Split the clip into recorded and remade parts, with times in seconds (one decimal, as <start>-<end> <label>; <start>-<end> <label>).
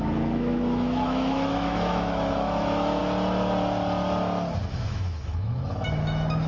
0.0-3.0 remade; 3.0-4.7 recorded; 4.7-6.5 remade